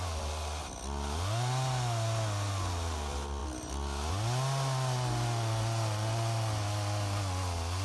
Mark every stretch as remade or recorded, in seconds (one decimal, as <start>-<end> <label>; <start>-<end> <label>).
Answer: 0.0-7.8 recorded